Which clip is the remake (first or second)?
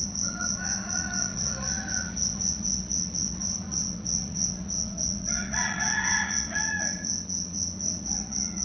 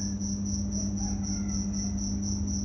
first